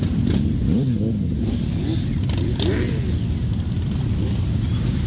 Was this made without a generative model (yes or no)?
yes